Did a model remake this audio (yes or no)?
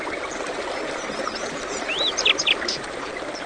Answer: no